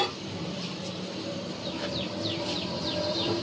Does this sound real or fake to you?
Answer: fake